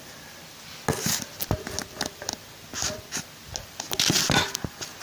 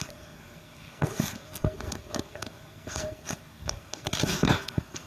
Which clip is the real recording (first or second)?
first